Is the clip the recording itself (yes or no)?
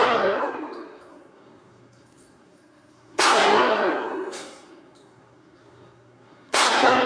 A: no